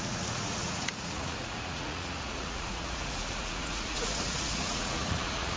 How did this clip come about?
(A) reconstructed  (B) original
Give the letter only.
A